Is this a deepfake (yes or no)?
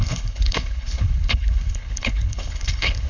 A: yes